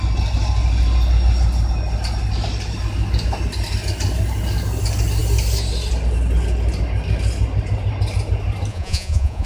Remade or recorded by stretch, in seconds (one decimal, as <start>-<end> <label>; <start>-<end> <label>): 0.0-8.7 recorded; 8.7-9.5 remade